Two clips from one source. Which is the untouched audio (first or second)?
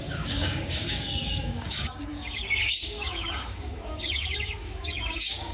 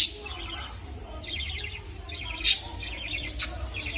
second